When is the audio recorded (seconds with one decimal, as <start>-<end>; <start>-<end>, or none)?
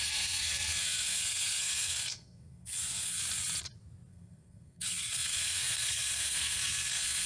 3.2-4.1